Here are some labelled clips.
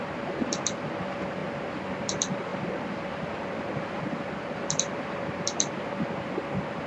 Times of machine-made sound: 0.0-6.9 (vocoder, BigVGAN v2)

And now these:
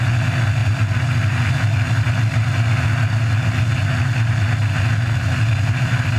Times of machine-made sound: none

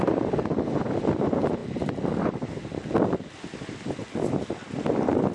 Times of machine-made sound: none